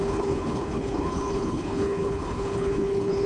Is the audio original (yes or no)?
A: no